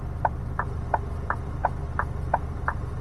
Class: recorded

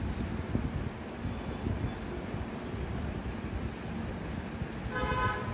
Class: recorded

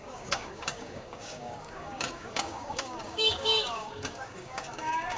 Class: remade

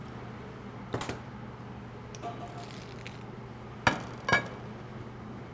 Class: recorded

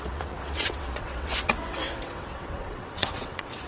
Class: remade